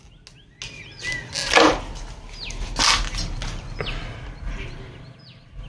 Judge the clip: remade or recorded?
recorded